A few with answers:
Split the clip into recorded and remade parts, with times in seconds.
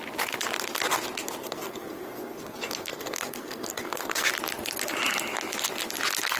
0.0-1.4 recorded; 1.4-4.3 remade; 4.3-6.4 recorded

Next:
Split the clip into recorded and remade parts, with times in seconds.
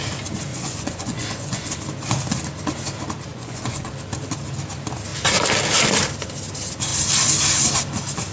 0.0-0.5 recorded; 0.5-1.7 remade; 1.7-3.3 recorded; 3.3-3.9 remade; 3.9-8.3 recorded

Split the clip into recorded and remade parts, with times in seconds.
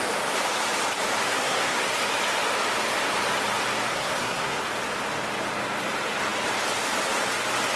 0.0-1.2 recorded; 1.2-1.8 remade; 1.8-3.9 recorded; 3.9-4.6 remade; 4.6-7.8 recorded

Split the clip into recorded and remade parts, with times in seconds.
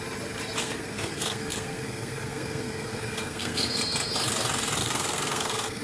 0.0-0.6 recorded; 0.6-4.1 remade; 4.1-4.8 recorded; 4.8-5.8 remade